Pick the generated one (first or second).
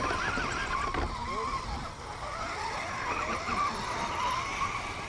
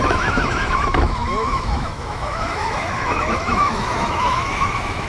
second